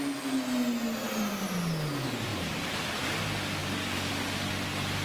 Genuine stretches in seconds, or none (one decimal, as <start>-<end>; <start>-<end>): 0.0-3.6; 4.1-5.0